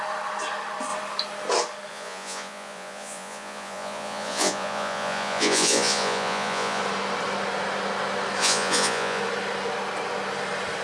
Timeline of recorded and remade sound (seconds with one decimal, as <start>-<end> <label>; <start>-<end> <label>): 0.0-1.9 recorded; 1.9-6.8 remade; 6.8-8.4 recorded; 8.4-9.2 remade; 9.2-10.8 recorded